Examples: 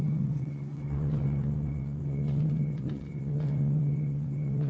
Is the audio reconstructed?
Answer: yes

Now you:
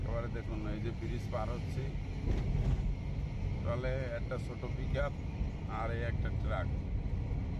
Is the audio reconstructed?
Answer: no